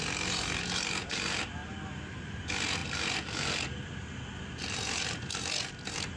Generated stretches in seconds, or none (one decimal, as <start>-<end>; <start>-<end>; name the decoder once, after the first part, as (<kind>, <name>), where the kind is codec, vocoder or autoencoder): none